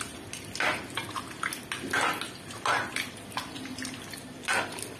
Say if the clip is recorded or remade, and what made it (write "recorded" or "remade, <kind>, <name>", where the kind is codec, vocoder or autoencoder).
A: recorded